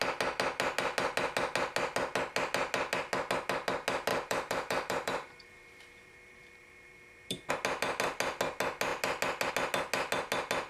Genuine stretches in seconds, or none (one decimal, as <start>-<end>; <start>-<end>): 0.0-4.1; 7.5-10.7